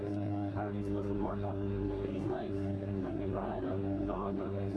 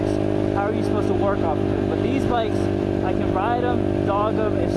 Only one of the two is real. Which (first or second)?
second